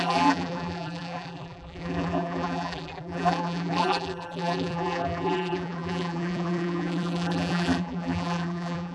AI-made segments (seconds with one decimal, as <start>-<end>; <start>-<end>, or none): 0.0-8.9